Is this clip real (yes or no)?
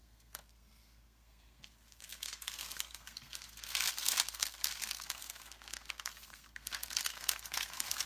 no